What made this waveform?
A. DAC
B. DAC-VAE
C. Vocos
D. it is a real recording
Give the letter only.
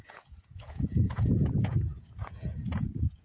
C